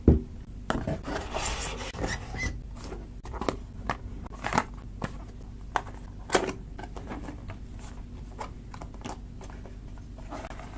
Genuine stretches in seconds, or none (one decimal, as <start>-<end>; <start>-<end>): 0.0-10.8